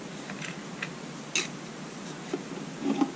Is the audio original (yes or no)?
yes